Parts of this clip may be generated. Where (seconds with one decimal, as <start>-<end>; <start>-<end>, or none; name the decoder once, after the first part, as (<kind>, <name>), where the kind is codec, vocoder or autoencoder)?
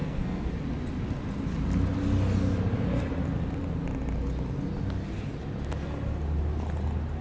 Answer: 0.0-0.5 (codec, SNAC)